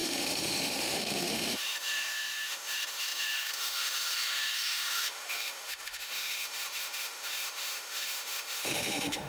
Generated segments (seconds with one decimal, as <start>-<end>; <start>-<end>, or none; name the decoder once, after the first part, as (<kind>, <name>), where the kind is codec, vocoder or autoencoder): 0.0-9.3 (autoencoder, DAC-VAE)